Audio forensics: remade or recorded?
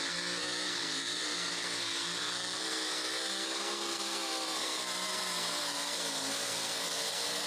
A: remade